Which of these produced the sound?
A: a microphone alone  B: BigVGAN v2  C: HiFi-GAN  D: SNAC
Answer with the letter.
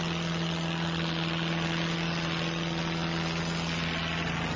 A